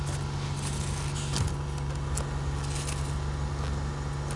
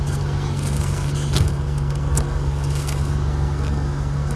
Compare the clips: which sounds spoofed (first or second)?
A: second